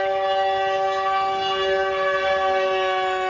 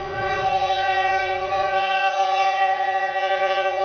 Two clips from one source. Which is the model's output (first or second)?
second